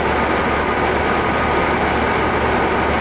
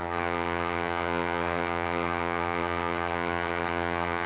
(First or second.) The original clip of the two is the first